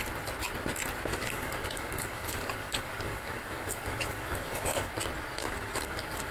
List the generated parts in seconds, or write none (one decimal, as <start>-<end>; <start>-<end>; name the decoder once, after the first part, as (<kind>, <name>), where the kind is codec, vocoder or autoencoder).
1.1-4.9 (codec, DAC); 5.4-6.3